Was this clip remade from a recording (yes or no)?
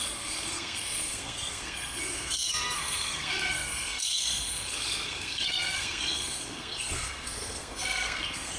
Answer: yes